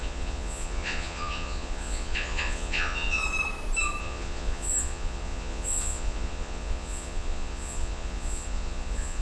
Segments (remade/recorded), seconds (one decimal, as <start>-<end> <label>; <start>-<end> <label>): 0.0-3.2 remade; 3.2-4.0 recorded; 4.0-9.2 remade